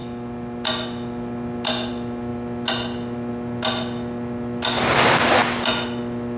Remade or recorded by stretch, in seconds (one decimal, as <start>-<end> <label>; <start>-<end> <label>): 0.0-6.4 recorded